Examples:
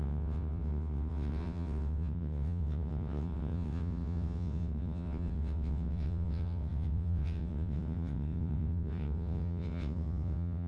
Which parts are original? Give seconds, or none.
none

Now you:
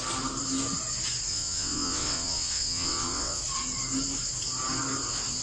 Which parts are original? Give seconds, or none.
0.0-1.3; 3.4-5.4

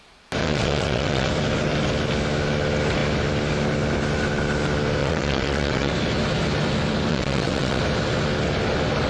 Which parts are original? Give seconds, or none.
0.0-0.4; 1.3-5.0; 5.9-7.1; 7.8-9.1

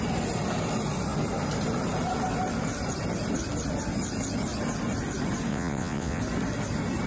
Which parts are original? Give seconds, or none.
0.0-5.5; 6.2-7.1